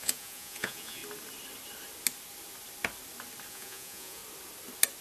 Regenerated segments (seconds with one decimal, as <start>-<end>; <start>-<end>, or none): 0.0-1.0; 3.5-4.2